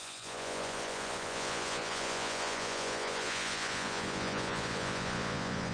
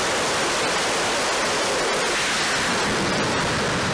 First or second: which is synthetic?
first